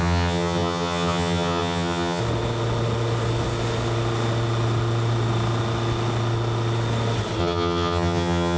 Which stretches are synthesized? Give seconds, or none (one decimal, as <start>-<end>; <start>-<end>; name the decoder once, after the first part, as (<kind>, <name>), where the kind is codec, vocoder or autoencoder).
0.0-2.2 (vocoder, HiFi-GAN); 7.4-8.6